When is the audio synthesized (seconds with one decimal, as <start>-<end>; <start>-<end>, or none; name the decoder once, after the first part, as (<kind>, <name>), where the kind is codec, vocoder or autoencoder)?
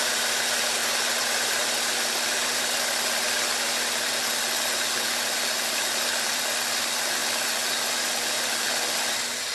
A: none